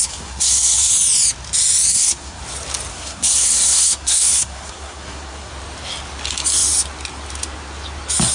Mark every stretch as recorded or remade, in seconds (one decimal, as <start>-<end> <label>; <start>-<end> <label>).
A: 0.0-0.9 remade; 0.9-1.9 recorded; 1.9-2.4 remade; 2.4-2.9 recorded; 2.9-5.5 remade; 5.5-8.3 recorded